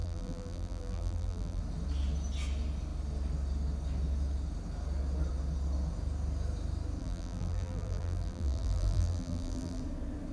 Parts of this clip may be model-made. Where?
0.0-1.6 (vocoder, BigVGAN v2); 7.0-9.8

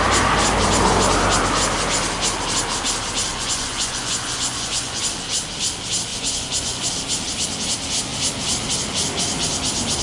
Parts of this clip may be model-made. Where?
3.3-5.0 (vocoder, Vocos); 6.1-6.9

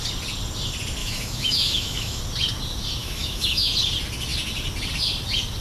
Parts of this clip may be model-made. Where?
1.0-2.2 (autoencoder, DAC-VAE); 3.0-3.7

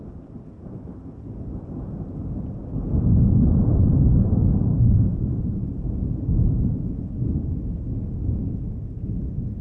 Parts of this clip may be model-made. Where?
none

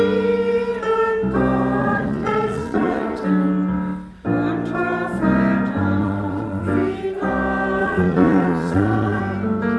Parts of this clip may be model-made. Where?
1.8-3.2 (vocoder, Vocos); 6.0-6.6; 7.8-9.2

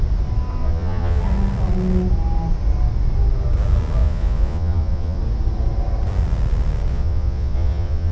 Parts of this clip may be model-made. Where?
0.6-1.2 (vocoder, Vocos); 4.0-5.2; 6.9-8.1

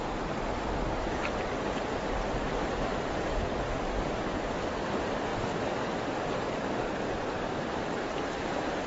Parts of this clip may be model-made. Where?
0.0-5.3 (vocoder, BigVGAN v2); 5.8-8.9

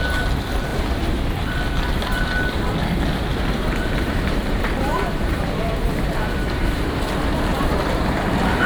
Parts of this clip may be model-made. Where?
0.7-1.3 (vocoder, BigVGAN v2); 3.3-7.0; 7.5-8.7